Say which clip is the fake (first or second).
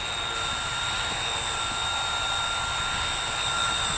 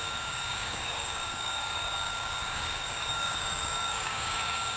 second